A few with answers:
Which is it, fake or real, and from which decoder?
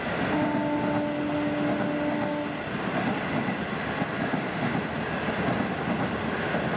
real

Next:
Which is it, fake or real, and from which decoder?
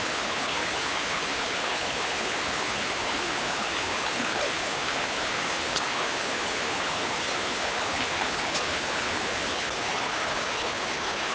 fake, codec, HILCodec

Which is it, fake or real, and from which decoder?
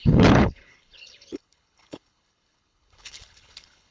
fake, codec, HILCodec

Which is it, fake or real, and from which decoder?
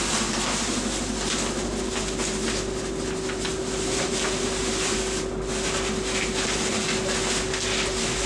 real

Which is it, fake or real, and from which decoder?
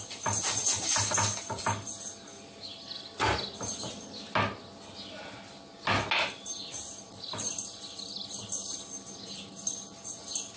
real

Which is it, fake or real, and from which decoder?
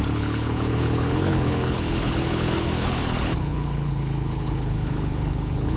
fake, codec, HILCodec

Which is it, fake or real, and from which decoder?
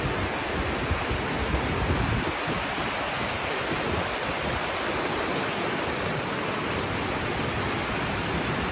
real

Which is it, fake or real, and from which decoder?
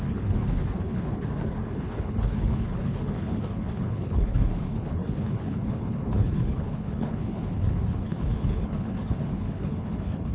fake, codec, HILCodec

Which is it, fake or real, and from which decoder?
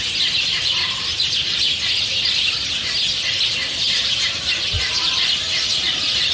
real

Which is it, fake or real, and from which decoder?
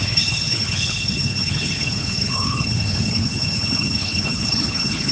fake, codec, HILCodec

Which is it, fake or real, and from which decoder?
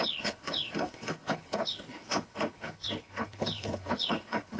fake, codec, HILCodec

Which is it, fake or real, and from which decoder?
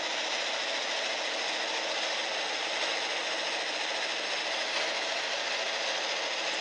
real